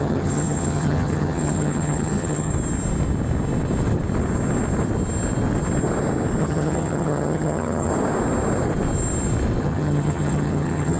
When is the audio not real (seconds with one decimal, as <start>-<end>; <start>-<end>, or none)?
0.0-2.5; 6.4-7.9; 9.6-11.0